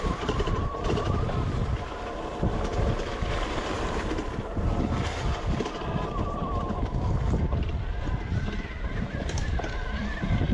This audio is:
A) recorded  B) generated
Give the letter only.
B